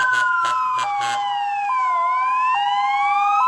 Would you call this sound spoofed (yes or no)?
no